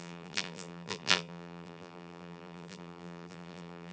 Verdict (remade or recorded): remade